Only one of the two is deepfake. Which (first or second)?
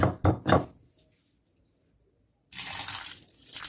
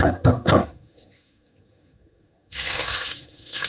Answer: second